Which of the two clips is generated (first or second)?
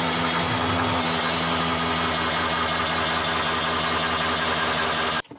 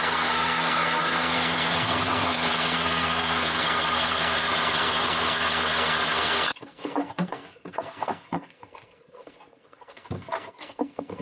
second